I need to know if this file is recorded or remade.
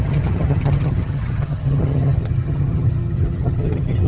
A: remade